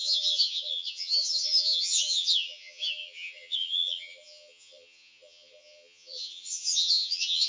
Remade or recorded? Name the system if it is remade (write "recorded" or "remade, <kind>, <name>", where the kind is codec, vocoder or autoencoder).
remade, vocoder, HiFi-GAN